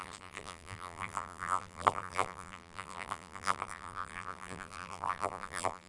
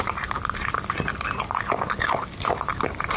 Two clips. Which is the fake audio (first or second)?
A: first